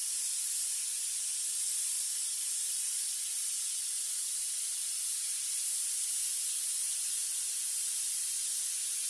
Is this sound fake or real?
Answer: real